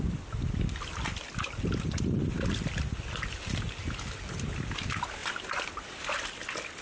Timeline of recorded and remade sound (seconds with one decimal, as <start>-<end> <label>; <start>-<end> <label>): 0.0-6.8 recorded